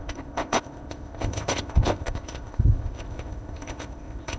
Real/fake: fake